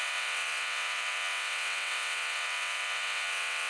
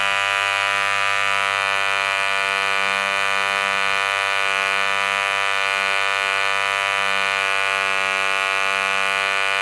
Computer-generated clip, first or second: first